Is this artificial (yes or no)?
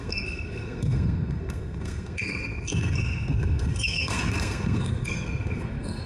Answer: yes